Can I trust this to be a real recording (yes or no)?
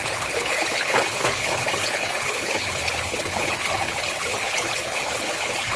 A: no